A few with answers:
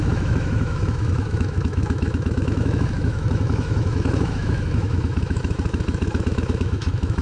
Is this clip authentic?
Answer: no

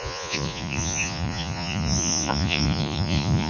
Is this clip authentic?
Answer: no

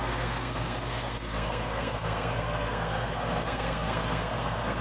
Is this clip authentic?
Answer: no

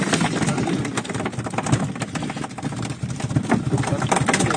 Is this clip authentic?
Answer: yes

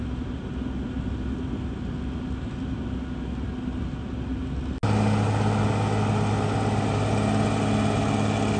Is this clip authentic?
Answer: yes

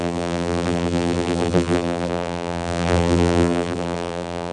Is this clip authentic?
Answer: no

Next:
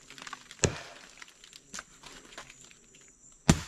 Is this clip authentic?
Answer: yes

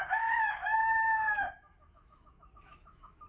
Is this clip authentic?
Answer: no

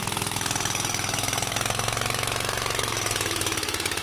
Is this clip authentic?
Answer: no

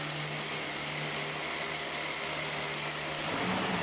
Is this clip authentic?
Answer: yes